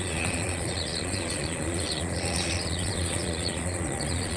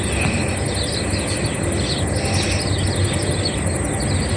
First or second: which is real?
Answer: second